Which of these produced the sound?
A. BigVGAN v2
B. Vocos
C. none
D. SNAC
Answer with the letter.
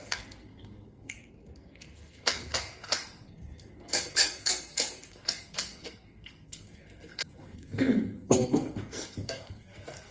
D